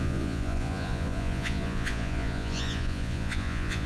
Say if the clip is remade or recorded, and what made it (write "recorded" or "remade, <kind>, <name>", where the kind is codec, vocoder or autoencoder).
remade, vocoder, Vocos